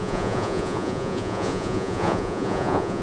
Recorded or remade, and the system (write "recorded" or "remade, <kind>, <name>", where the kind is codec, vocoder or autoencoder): remade, vocoder, Vocos